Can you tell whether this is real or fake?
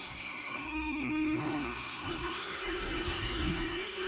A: fake